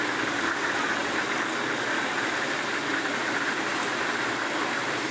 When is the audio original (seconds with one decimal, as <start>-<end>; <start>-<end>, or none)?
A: 0.0-5.1